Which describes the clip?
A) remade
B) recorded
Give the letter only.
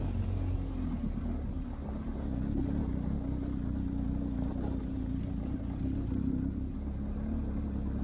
B